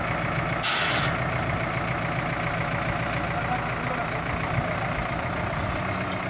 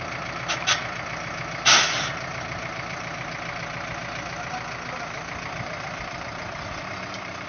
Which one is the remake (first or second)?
second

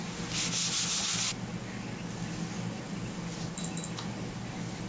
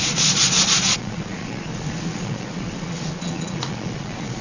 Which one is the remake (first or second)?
second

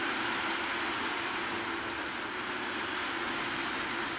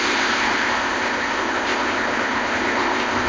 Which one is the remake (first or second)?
second